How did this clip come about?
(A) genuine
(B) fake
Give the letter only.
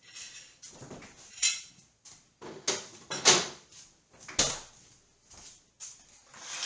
A